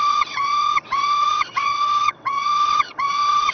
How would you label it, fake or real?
fake